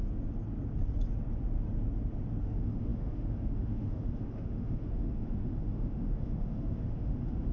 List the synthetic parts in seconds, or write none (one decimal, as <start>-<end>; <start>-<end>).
2.4-7.5